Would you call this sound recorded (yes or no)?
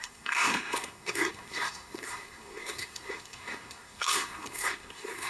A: no